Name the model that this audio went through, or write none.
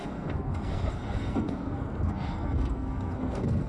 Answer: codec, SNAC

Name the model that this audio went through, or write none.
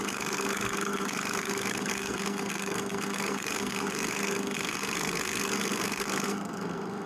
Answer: codec, SNAC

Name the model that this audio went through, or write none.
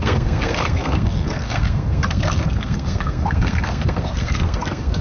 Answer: codec, SNAC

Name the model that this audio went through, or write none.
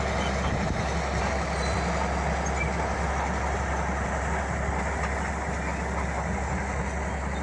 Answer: none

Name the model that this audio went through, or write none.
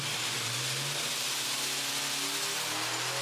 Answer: none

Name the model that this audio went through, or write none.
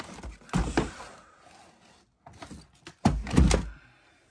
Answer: none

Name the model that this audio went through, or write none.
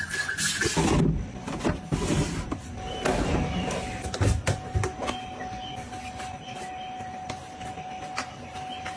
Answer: none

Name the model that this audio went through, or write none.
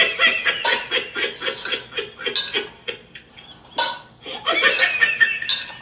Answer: none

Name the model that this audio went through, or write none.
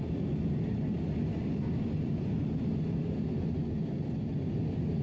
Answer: none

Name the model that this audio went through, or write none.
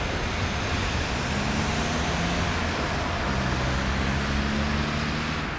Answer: none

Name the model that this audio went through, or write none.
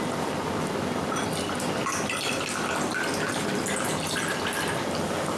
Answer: none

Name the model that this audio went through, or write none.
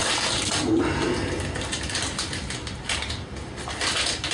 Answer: none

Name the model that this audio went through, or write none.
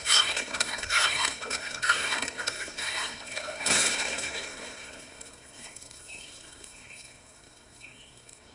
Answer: codec, SNAC